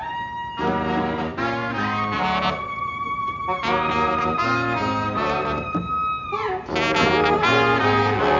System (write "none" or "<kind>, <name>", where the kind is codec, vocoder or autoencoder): none